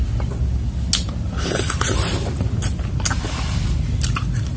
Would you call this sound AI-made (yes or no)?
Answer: no